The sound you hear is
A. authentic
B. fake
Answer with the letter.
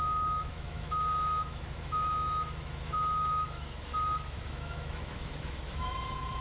B